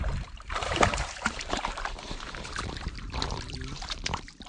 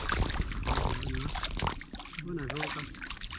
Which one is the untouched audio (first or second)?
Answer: second